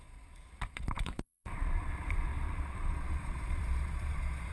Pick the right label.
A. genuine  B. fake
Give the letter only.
B